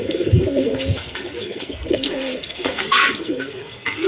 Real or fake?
fake